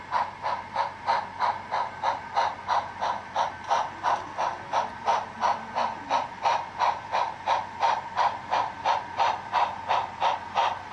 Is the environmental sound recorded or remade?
recorded